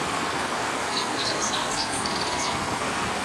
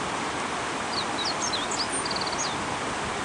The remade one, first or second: first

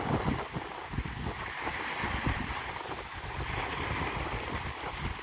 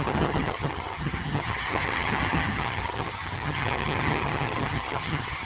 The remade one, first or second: second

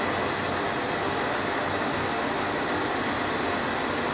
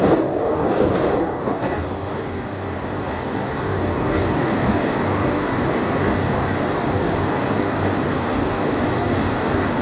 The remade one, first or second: second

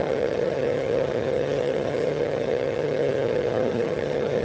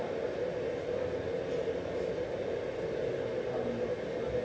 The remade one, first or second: first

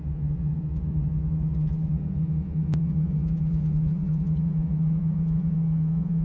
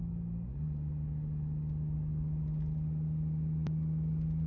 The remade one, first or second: first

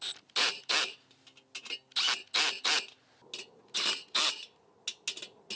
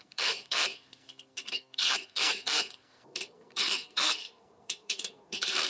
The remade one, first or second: second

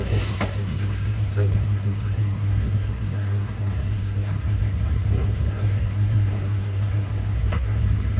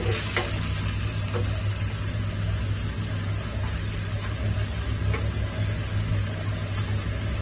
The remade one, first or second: first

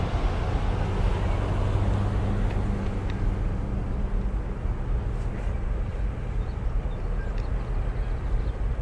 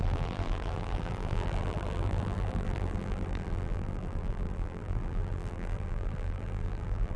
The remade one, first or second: second